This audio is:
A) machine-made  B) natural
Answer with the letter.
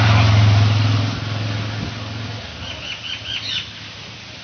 B